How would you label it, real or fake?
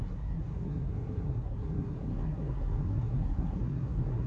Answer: fake